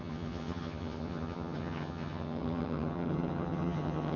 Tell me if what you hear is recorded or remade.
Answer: remade